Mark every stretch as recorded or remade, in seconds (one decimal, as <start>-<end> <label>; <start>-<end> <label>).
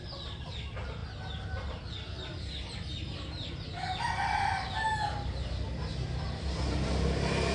0.0-7.5 recorded